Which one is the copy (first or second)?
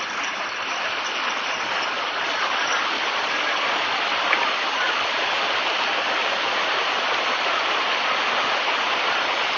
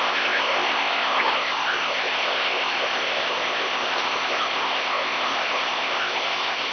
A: second